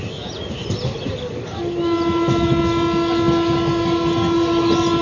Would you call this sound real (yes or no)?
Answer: yes